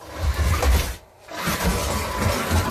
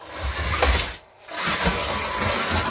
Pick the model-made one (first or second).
first